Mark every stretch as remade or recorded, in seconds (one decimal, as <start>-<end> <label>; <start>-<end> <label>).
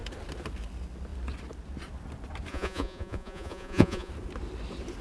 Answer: 0.0-2.5 recorded; 2.5-4.1 remade; 4.1-5.0 recorded